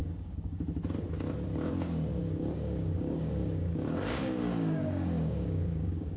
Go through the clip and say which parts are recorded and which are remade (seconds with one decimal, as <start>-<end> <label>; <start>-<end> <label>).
0.0-0.6 remade; 0.6-2.2 recorded; 2.2-6.2 remade